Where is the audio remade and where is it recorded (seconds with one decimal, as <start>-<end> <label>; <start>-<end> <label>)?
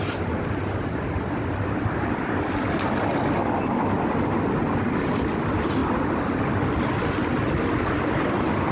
0.0-8.7 recorded